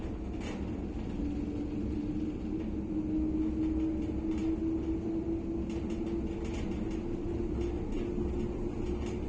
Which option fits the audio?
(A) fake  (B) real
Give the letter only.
B